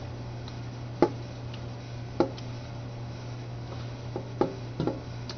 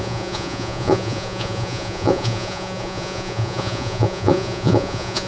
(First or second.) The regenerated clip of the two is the second